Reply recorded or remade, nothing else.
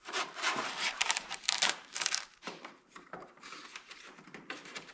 remade